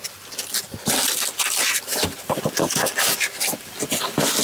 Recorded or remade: recorded